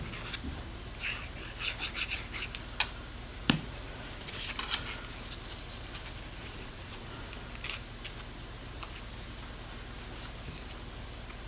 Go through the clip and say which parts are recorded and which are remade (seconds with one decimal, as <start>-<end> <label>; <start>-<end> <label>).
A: 0.0-3.3 recorded; 3.3-4.5 remade; 4.5-6.4 recorded; 6.4-7.3 remade; 7.3-11.5 recorded